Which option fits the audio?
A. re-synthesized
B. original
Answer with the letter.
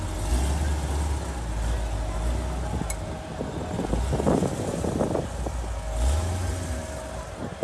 B